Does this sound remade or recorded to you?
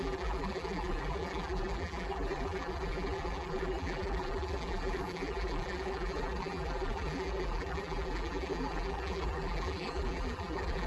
remade